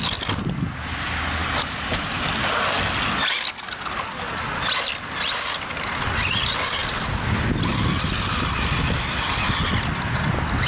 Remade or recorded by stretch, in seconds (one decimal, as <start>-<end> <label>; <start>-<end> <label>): 0.0-1.4 recorded; 1.4-2.3 remade; 2.3-10.7 recorded